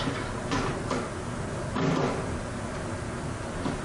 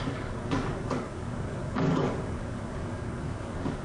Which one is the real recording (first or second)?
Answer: first